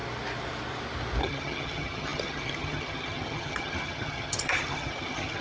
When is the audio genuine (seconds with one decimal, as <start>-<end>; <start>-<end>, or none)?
0.0-1.2